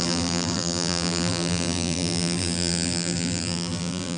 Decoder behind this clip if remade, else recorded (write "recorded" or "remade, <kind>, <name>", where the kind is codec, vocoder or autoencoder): remade, vocoder, BigVGAN v2